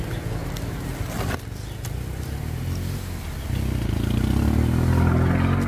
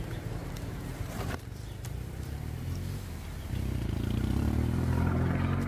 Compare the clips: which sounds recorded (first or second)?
first